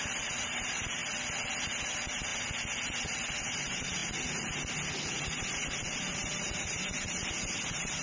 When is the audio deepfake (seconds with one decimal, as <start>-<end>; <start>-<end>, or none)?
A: 0.0-1.0; 1.6-2.3; 3.4-4.0; 5.1-8.0